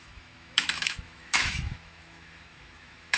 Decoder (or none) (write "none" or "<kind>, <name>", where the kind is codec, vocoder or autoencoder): autoencoder, DAC-VAE